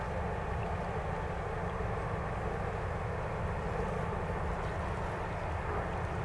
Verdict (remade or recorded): recorded